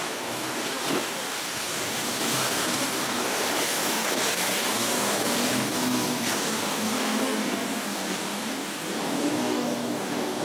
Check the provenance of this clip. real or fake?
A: fake